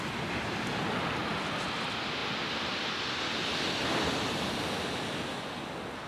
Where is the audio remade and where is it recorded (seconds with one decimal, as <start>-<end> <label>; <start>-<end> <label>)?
0.0-6.1 recorded